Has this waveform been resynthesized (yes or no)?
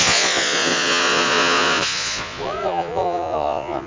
yes